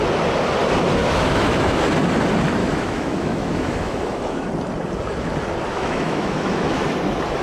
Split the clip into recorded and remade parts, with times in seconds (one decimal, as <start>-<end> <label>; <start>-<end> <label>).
0.0-1.0 recorded; 1.0-1.8 remade; 1.8-2.6 recorded; 2.6-4.5 remade; 4.5-5.7 recorded; 5.7-6.8 remade; 6.8-7.4 recorded